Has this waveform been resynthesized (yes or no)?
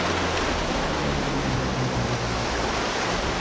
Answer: no